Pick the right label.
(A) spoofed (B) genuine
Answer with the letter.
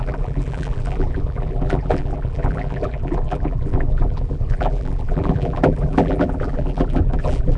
A